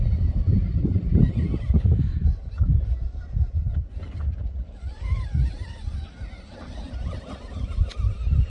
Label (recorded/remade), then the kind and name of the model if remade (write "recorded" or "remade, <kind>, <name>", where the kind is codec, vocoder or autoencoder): recorded